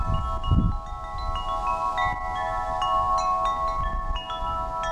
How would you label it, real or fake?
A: real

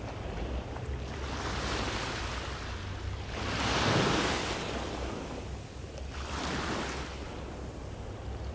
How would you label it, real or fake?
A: real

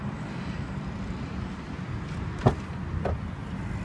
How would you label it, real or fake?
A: real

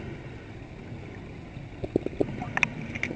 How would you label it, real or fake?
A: real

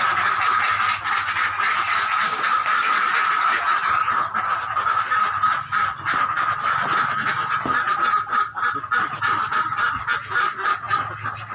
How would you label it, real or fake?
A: real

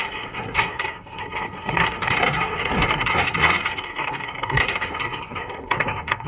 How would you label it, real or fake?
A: fake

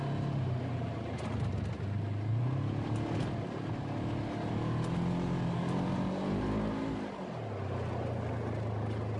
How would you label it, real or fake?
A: real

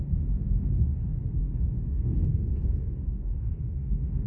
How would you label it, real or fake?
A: fake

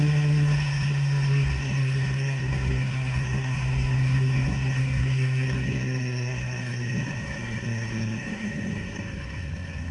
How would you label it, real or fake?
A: fake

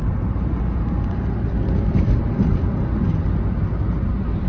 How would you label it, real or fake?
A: real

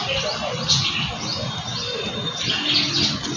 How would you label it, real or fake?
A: real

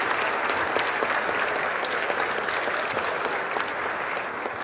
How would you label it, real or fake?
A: real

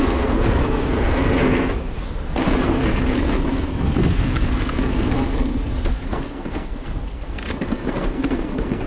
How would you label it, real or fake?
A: fake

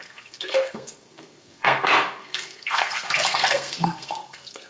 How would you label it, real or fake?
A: fake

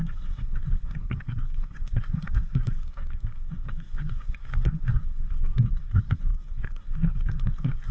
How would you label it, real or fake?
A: fake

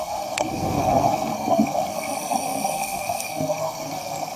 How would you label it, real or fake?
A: fake